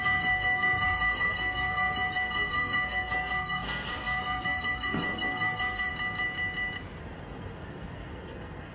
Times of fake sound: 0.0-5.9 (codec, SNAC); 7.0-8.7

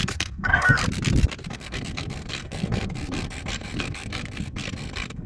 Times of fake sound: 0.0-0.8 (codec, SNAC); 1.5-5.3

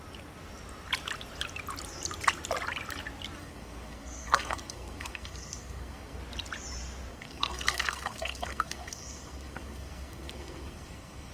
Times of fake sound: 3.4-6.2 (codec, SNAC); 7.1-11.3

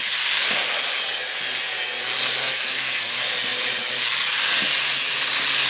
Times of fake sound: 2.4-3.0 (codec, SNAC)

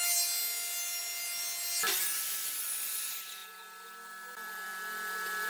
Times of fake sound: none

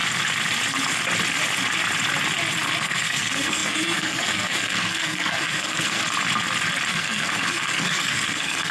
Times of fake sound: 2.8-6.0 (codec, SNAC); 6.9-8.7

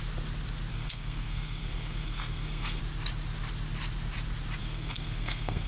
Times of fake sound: 0.7-2.8 (codec, SNAC); 4.6-5.7